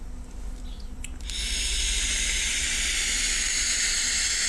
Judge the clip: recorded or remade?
recorded